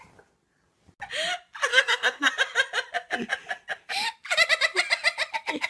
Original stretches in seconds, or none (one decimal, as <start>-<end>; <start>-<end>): 0.0-1.7; 2.3-5.7